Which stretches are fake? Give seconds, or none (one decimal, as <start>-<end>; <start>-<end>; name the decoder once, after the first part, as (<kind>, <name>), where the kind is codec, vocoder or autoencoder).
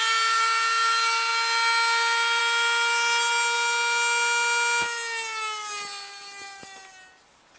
none